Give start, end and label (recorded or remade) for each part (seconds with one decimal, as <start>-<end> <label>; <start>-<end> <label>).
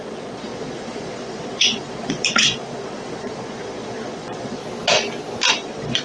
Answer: 0.0-4.6 remade; 4.6-5.5 recorded; 5.5-6.0 remade